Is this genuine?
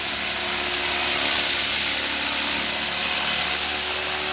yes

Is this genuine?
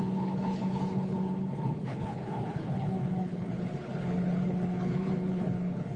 no